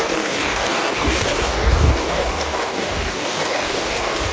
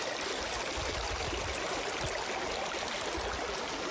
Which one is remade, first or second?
first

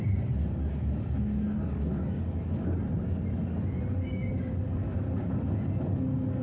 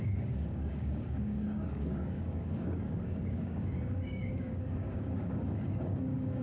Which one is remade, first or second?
second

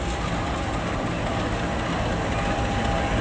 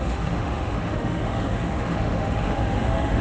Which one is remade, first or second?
second